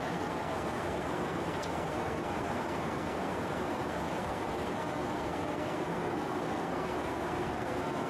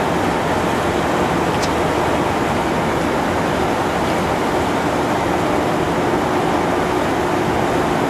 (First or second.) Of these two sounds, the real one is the second